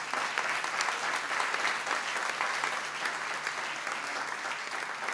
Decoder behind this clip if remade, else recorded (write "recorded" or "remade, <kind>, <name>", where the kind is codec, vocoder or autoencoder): recorded